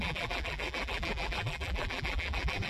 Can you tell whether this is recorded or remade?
remade